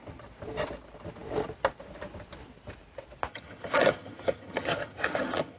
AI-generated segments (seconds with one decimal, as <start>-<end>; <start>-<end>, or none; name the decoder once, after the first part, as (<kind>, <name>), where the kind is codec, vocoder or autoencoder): 3.3-5.6 (vocoder, HiFi-GAN)